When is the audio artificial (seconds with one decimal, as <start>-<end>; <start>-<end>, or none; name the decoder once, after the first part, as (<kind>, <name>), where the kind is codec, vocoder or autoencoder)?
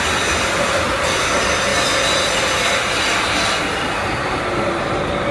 1.7-3.8 (vocoder, BigVGAN v2)